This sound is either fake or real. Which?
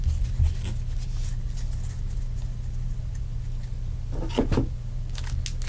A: real